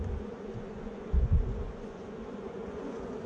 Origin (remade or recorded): remade